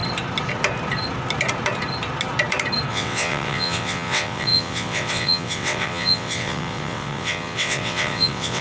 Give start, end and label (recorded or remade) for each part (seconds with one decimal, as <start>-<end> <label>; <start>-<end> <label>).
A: 0.0-2.9 recorded; 2.9-8.6 remade